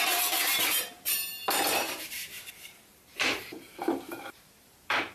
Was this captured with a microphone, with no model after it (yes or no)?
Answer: no